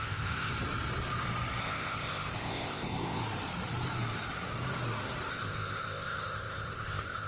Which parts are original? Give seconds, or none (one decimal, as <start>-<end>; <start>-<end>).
0.5-1.6; 3.2-5.3